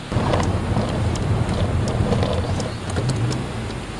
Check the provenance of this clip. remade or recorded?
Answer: recorded